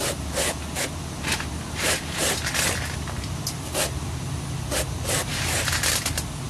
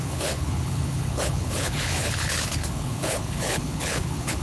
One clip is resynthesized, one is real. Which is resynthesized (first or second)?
second